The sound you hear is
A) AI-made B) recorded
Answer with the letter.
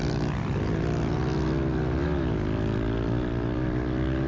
B